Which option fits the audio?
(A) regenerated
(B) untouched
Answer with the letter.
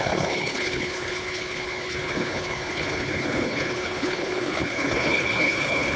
A